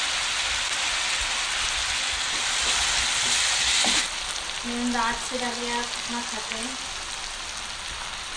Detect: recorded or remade recorded